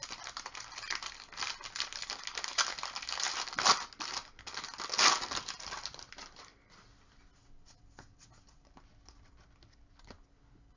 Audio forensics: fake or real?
real